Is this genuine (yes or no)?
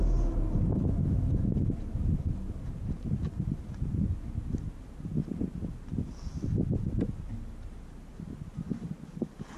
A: yes